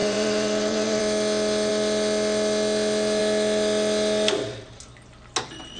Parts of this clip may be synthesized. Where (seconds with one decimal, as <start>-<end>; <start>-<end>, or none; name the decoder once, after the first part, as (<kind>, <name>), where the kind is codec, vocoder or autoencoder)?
0.0-1.0 (vocoder, WaveNeXt)